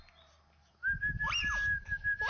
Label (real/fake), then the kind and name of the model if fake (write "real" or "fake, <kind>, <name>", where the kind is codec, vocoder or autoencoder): real